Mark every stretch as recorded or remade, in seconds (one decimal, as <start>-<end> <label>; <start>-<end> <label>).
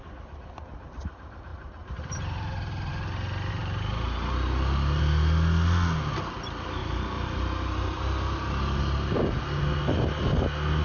0.0-1.5 recorded; 1.5-2.9 remade; 2.9-3.6 recorded; 3.6-5.0 remade; 5.0-6.8 recorded; 6.8-8.0 remade; 8.0-10.8 recorded